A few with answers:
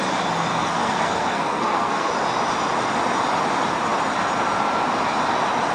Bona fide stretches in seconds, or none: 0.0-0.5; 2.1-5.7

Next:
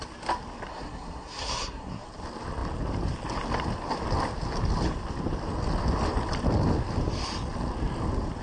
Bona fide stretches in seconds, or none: 0.0-0.7; 2.1-8.4

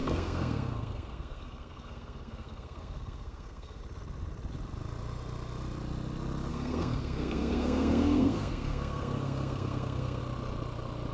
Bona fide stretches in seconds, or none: 3.8-6.5; 10.2-11.1

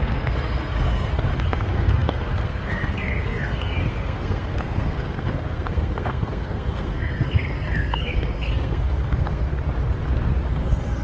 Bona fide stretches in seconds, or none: 9.5-10.5